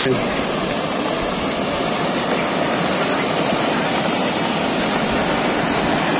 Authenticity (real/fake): real